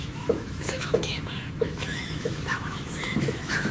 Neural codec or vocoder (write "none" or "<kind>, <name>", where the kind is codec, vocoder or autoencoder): autoencoder, DAC-VAE